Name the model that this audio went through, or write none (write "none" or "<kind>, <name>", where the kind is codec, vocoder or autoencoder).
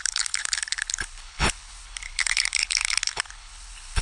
codec, HILCodec